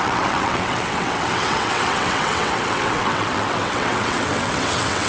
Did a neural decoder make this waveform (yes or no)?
yes